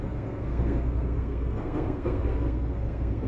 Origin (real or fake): fake